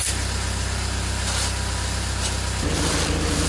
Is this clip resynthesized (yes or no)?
no